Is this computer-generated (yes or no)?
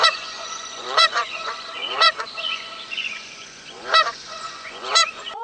yes